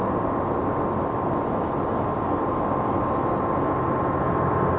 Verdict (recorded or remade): recorded